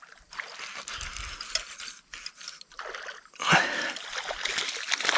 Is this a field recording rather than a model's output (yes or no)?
yes